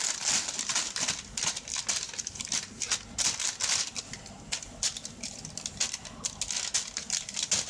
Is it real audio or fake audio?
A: real